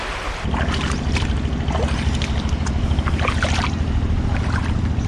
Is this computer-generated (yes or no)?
no